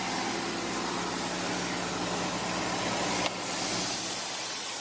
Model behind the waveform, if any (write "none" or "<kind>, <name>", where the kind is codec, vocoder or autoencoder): none